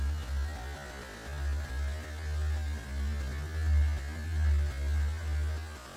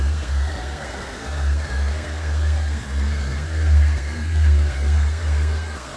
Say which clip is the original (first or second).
first